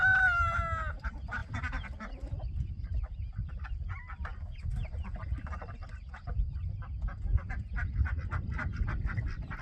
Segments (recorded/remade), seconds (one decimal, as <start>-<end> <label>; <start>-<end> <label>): 0.0-9.6 recorded